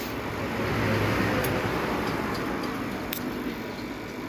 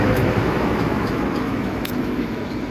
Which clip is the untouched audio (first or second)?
first